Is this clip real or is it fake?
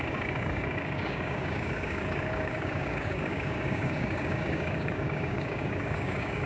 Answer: fake